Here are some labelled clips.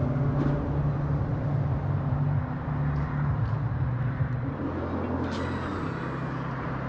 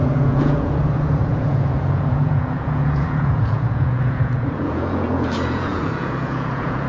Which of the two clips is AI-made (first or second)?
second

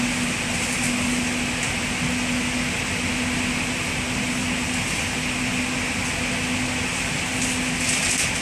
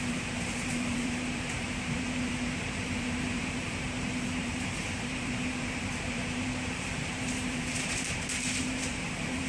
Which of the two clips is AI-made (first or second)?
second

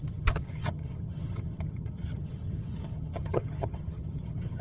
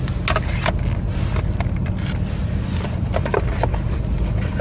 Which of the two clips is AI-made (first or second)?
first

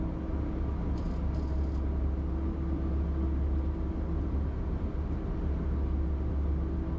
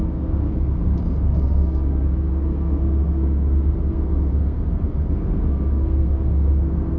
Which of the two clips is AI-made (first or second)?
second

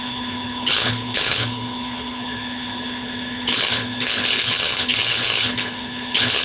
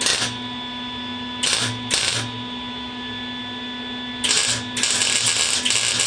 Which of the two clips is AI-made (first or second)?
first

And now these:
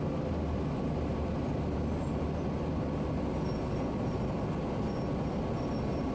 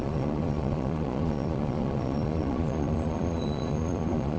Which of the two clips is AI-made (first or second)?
second